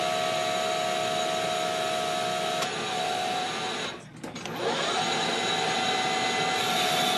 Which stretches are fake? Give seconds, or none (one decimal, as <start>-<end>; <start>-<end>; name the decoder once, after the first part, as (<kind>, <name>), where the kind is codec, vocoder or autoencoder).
none